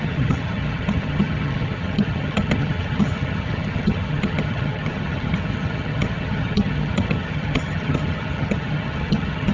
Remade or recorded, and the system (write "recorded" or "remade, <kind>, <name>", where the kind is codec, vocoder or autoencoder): remade, vocoder, HiFi-GAN